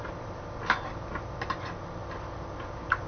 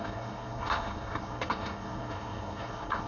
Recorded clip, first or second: first